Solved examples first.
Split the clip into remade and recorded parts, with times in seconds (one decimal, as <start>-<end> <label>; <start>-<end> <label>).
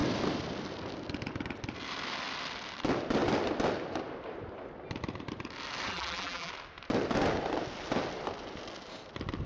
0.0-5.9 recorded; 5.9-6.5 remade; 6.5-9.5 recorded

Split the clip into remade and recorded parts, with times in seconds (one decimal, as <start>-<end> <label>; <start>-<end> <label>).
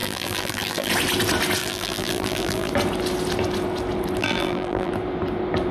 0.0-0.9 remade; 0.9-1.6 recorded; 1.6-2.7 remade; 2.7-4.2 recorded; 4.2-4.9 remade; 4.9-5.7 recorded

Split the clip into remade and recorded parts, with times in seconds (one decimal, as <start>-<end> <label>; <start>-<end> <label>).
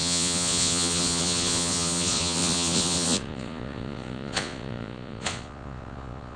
0.0-6.4 remade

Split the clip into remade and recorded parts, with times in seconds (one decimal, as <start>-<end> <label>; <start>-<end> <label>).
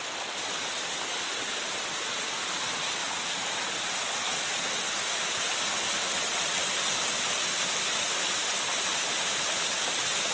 0.0-10.3 recorded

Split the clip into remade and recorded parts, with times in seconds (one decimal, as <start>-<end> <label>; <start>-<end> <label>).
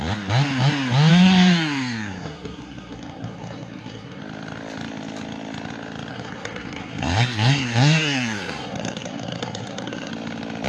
0.0-1.1 recorded; 1.1-4.2 remade; 4.2-6.1 recorded; 6.1-10.1 remade; 10.1-10.7 recorded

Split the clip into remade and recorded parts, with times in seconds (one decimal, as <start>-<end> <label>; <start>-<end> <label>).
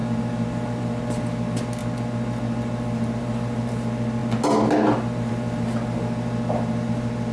0.0-7.3 recorded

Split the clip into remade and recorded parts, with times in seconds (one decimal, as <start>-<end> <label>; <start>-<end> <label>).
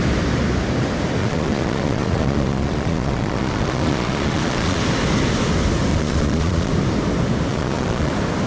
0.0-1.2 recorded; 1.2-4.8 remade; 4.8-5.9 recorded; 5.9-6.7 remade; 6.7-7.5 recorded; 7.5-8.1 remade; 8.1-8.5 recorded